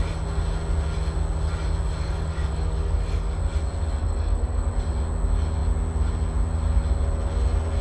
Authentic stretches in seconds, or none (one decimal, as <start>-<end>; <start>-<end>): 0.0-2.0; 3.4-4.0; 4.7-7.8